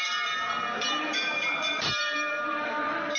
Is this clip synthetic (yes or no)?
yes